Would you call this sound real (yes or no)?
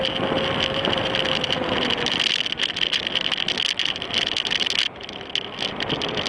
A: yes